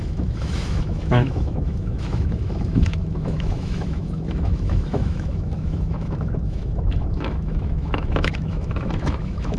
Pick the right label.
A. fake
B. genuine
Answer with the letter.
A